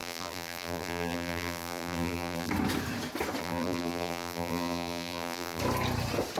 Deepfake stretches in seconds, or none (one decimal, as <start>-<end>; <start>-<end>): 0.0-2.5; 3.4-5.6